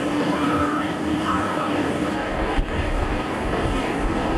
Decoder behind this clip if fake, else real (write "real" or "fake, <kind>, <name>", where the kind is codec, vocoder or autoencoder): fake, codec, DAC